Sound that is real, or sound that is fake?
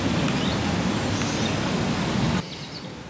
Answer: real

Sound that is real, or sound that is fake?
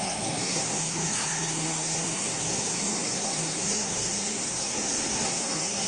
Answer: fake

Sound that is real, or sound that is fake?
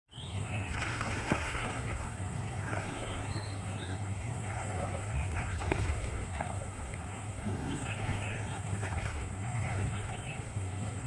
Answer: fake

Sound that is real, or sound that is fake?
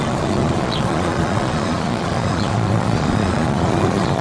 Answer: fake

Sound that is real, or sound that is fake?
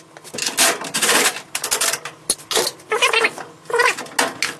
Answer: real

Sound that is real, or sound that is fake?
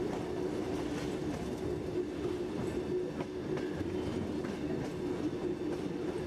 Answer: real